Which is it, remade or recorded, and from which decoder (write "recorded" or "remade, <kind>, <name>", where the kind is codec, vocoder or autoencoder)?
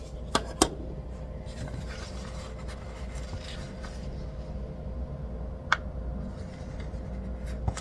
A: recorded